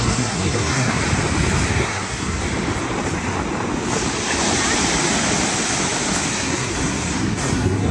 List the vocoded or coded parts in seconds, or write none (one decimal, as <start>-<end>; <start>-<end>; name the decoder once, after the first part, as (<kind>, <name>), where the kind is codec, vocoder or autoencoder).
0.0-1.0 (codec, SNAC); 1.7-2.4; 6.3-7.9